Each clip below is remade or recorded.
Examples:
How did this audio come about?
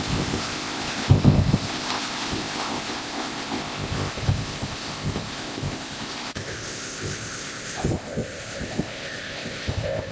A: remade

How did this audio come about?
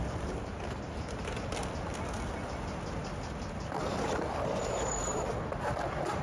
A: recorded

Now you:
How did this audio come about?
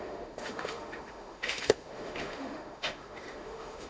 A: remade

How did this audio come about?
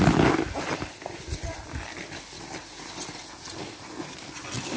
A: recorded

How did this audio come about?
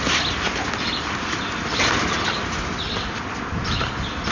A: recorded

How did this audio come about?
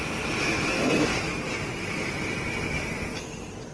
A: recorded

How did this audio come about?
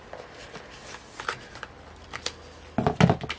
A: recorded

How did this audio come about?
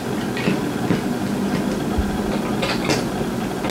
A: recorded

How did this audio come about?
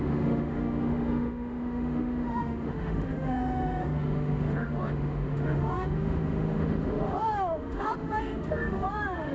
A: remade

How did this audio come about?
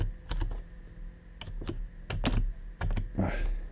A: recorded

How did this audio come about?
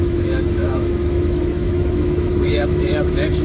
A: remade